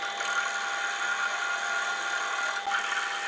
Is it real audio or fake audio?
real